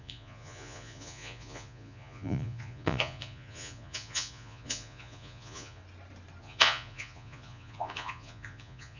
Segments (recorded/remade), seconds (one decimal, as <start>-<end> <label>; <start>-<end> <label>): 0.0-5.8 remade; 5.8-6.4 recorded; 6.4-9.0 remade